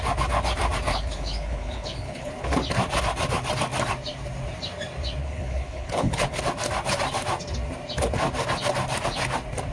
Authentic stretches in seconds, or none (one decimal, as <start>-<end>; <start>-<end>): 0.0-0.9; 2.3-5.2; 6.4-9.7